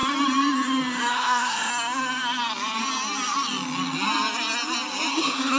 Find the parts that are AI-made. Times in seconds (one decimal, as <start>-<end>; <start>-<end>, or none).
1.1-1.7; 5.1-5.6